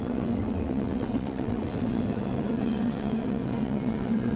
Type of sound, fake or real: fake